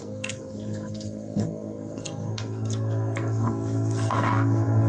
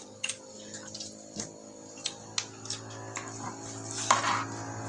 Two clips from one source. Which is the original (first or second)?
second